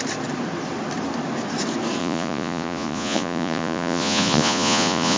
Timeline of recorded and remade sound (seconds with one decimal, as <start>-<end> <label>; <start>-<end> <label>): 0.0-2.0 recorded; 2.0-5.2 remade